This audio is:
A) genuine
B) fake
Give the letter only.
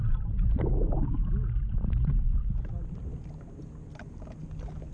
A